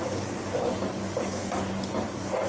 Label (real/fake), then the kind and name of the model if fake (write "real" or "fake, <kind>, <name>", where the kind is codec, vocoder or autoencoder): real